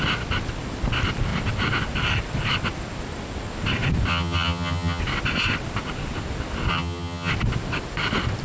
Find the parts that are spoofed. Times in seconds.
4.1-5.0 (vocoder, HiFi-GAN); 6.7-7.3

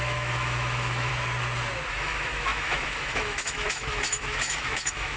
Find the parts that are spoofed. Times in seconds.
0.0-1.1 (autoencoder, DAC-VAE); 1.9-5.2